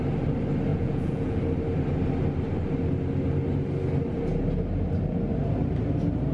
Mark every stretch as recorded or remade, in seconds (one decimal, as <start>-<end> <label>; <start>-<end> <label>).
0.0-0.7 recorded; 0.7-1.4 remade; 1.4-6.3 recorded